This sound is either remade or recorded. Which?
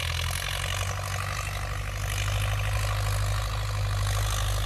recorded